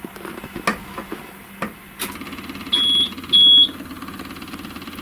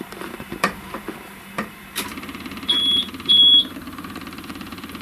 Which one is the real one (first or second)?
first